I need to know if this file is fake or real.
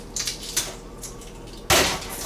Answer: real